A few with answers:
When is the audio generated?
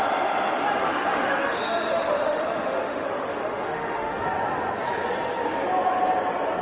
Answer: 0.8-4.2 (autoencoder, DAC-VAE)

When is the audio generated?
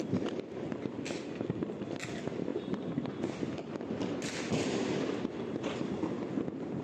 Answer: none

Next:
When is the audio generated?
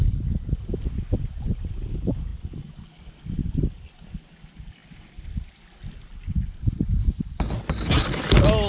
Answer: 3.4-3.9 (vocoder, BigVGAN v2)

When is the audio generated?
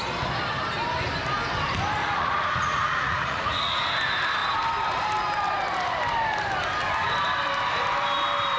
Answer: 2.0-3.8 (vocoder, Vocos)